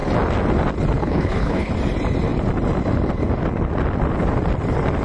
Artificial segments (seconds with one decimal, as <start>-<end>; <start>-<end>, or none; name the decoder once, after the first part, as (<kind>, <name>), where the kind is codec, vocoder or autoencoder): 1.0-1.7 (codec, HILCodec)